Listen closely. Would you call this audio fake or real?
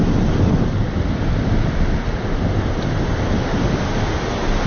real